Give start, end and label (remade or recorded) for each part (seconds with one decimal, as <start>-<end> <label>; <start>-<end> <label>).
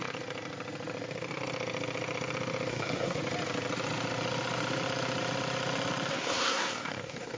0.0-2.7 recorded; 2.7-3.2 remade; 3.2-6.1 recorded; 6.1-7.4 remade